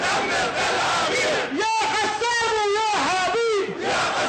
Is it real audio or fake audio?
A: real